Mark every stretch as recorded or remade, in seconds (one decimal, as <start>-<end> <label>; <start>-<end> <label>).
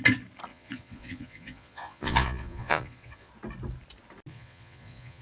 0.0-0.5 recorded; 0.5-3.3 remade; 3.3-4.3 recorded; 4.3-5.2 remade